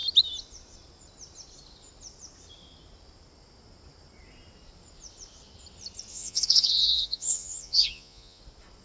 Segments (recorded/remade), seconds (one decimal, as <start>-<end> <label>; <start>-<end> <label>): 0.0-6.1 recorded; 6.1-8.4 remade; 8.4-8.8 recorded